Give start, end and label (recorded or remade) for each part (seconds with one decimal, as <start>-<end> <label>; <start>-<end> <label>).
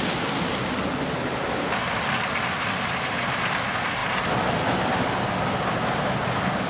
0.0-6.7 recorded